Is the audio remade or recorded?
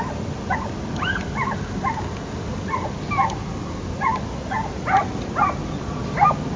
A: recorded